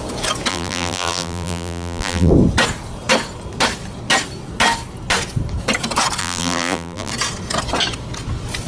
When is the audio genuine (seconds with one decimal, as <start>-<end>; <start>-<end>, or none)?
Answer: 0.0-0.5; 2.3-6.2; 7.1-8.7